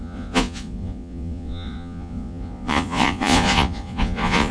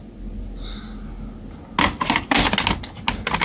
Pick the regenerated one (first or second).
first